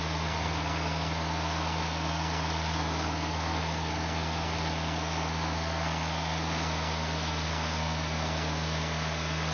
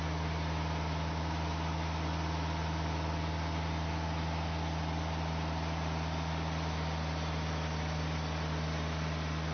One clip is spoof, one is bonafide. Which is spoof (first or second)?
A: first